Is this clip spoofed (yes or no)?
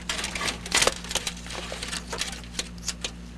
no